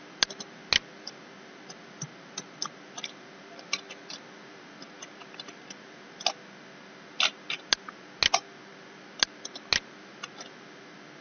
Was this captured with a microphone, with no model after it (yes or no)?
yes